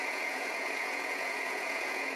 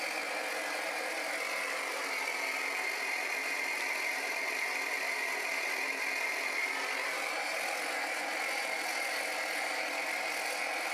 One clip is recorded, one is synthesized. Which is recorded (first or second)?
second